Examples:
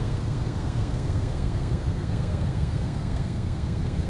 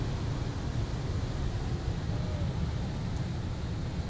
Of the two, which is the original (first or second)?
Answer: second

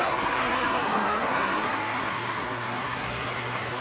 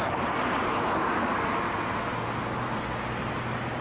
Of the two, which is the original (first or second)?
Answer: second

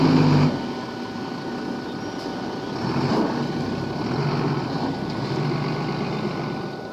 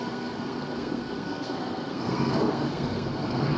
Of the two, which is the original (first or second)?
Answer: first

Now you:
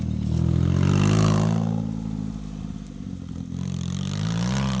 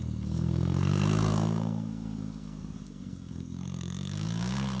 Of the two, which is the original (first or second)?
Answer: first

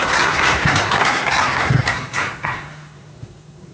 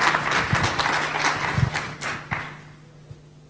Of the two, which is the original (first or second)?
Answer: second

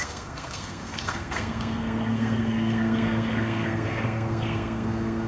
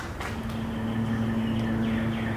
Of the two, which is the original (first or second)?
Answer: second